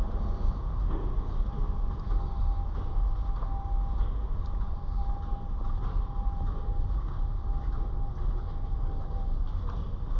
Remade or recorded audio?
recorded